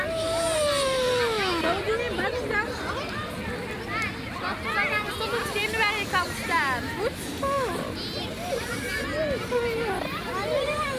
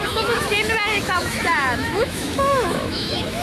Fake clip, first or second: second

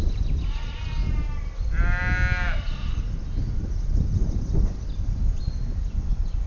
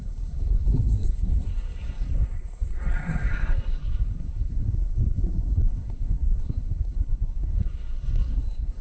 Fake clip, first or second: second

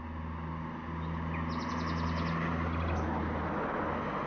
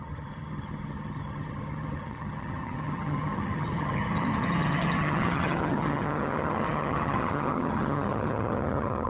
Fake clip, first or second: second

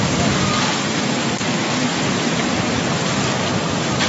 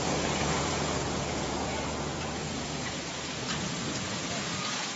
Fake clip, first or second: second